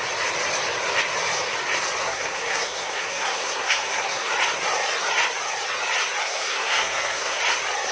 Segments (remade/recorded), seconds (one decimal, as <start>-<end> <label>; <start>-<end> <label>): 0.0-2.0 recorded; 2.0-4.3 remade; 4.3-6.2 recorded; 6.2-7.4 remade; 7.4-7.9 recorded

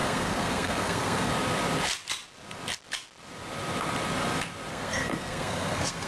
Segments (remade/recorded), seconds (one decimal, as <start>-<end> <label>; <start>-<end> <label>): 0.0-1.3 remade; 1.3-4.7 recorded; 4.7-6.1 remade